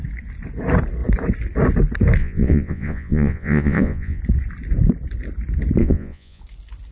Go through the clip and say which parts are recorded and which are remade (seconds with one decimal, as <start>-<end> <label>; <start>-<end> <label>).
0.0-2.2 recorded; 2.2-4.2 remade; 4.2-5.8 recorded; 5.8-6.4 remade; 6.4-6.9 recorded